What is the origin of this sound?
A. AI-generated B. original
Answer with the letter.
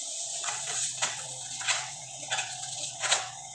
A